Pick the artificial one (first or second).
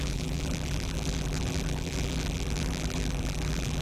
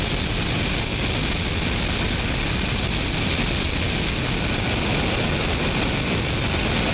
first